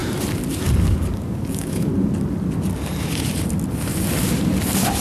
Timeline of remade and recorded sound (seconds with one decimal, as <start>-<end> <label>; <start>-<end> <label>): 0.0-0.8 recorded; 0.8-1.9 remade; 1.9-5.0 recorded